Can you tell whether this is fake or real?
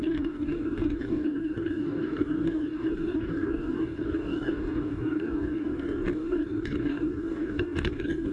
fake